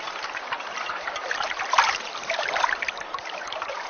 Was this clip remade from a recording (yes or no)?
yes